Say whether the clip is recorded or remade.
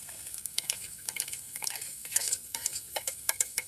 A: remade